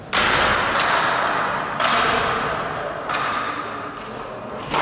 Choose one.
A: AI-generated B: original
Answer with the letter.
B